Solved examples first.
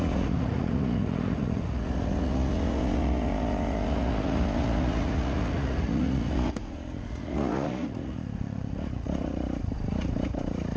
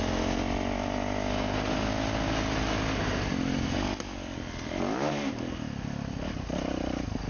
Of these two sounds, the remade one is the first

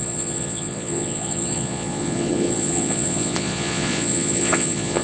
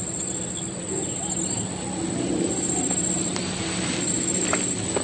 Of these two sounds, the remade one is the first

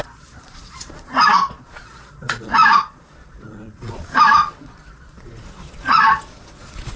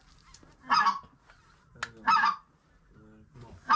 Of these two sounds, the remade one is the first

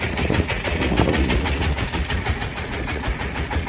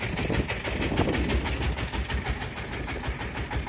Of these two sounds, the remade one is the first